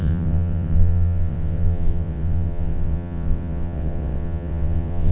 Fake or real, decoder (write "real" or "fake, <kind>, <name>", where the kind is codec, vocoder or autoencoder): fake, vocoder, WaveNeXt